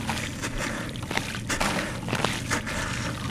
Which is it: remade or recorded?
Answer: recorded